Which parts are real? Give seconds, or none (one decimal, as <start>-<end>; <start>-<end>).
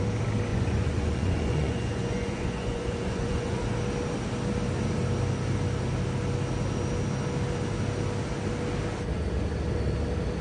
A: 0.0-0.5; 3.6-10.4